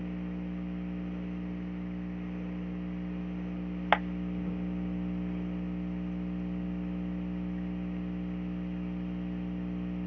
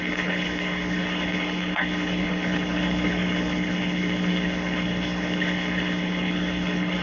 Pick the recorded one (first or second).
first